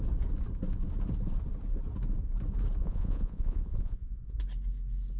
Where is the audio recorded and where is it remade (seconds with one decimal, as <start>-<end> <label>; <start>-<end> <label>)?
0.0-2.8 recorded; 2.8-4.4 remade; 4.4-5.2 recorded